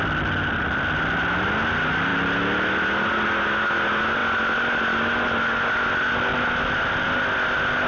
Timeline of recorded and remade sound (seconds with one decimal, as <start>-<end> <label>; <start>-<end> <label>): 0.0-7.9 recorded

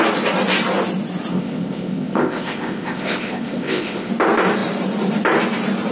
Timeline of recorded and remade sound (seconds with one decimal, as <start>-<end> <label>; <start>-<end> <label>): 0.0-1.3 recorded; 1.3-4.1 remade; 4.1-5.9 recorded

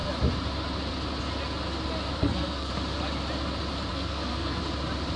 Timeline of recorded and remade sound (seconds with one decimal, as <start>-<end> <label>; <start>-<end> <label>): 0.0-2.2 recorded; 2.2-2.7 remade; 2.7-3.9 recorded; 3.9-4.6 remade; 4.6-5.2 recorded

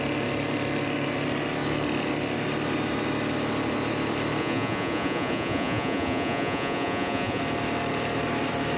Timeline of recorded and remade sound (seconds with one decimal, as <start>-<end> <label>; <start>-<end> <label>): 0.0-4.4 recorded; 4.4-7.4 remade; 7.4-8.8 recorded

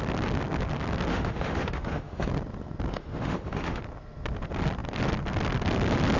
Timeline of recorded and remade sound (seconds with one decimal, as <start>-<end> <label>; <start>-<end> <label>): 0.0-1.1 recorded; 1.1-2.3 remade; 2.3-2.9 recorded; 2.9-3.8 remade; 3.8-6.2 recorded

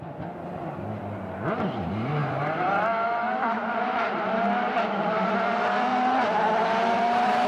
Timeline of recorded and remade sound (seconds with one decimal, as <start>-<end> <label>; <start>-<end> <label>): 0.0-2.2 recorded; 2.2-5.3 remade; 5.3-5.9 recorded; 5.9-7.5 remade

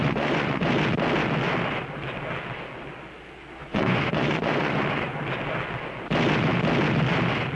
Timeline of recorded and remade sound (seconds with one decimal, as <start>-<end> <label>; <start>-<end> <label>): 0.0-0.7 remade; 0.7-3.6 recorded; 3.6-5.2 remade; 5.2-7.6 recorded